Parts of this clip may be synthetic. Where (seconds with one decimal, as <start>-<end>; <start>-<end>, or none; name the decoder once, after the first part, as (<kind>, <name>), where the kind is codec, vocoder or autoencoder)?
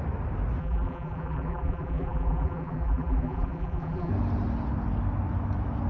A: 0.6-4.1 (vocoder, BigVGAN v2)